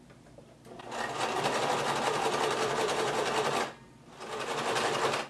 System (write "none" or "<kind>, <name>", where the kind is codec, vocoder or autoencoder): none